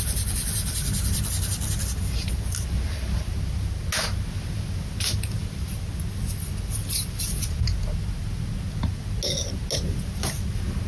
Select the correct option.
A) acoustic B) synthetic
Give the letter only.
A